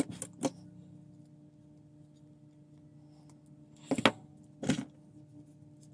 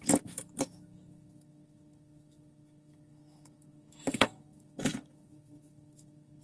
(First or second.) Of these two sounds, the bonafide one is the first